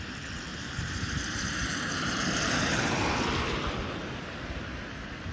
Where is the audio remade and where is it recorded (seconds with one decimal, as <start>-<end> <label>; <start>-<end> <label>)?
0.0-0.5 recorded; 0.5-3.0 remade; 3.0-4.0 recorded; 4.0-4.8 remade; 4.8-5.3 recorded